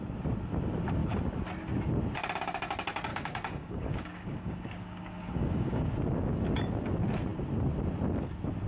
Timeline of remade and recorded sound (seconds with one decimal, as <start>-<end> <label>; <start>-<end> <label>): 0.0-3.1 recorded; 3.1-5.8 remade; 5.8-8.7 recorded